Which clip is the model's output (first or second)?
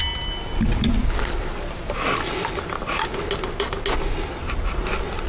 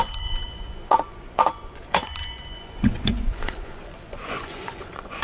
second